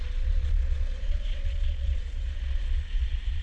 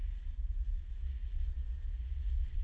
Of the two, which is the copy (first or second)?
first